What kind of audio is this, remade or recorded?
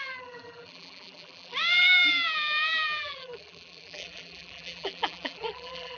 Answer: remade